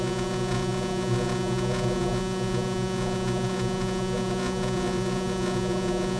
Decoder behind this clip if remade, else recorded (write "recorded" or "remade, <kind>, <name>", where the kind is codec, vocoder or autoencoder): remade, vocoder, Vocos